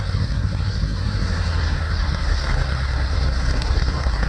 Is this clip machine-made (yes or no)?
yes